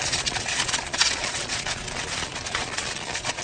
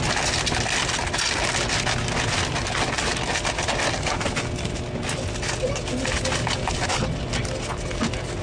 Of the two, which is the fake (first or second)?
first